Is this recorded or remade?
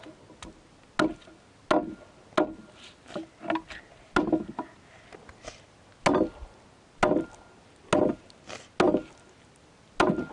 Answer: recorded